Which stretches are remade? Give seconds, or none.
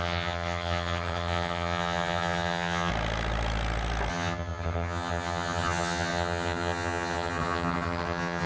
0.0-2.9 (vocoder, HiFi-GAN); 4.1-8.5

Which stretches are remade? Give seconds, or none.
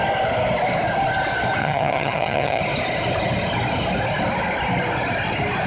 1.6-2.6 (vocoder, HiFi-GAN)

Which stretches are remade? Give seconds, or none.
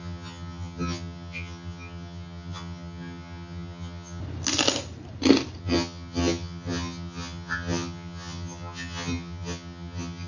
0.0-4.2 (vocoder, HiFi-GAN); 5.6-10.3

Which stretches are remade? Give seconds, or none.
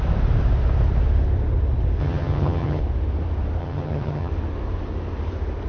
2.0-2.8 (vocoder, HiFi-GAN); 3.6-4.3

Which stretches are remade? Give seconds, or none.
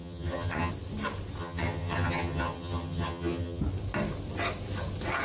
0.0-0.7 (vocoder, HiFi-GAN); 1.4-3.6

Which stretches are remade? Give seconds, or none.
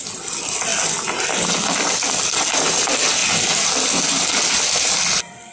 none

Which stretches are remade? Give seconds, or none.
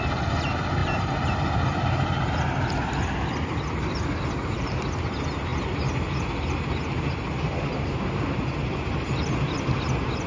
none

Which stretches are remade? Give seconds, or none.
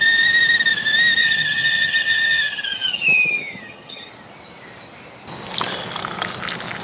1.2-4.1 (vocoder, HiFi-GAN)